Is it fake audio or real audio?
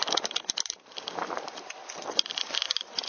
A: fake